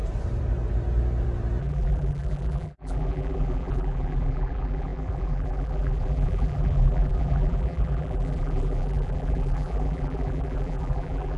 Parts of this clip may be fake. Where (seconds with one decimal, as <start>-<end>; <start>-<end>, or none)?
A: 1.6-11.4